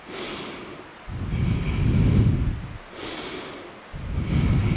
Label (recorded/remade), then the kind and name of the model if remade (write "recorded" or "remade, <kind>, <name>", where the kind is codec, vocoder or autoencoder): recorded